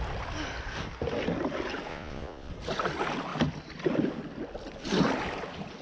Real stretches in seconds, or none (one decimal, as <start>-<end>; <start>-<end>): 0.0-1.9; 2.5-5.8